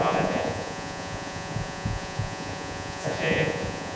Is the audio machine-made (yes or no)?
yes